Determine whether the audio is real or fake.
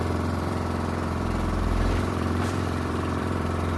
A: fake